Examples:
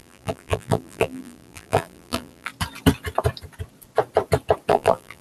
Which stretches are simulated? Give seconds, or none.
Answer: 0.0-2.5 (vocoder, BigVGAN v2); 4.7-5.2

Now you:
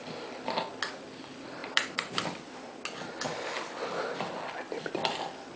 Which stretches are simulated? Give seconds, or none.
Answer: 1.6-2.7 (vocoder, BigVGAN v2)